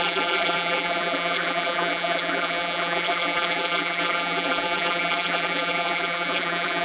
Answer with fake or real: fake